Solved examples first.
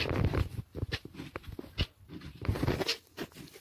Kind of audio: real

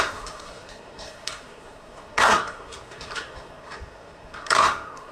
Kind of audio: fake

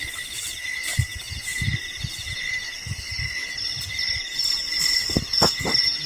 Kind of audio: real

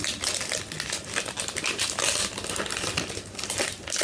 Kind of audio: real